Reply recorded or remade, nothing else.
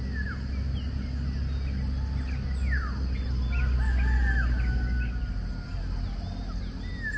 recorded